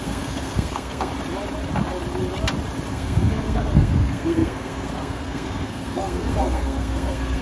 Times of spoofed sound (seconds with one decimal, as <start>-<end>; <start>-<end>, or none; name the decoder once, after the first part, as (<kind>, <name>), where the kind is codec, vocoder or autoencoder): 0.0-1.1 (codec, SNAC); 2.9-7.4